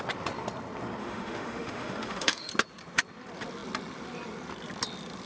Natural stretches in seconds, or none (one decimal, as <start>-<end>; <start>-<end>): 0.0-1.0; 2.5-5.3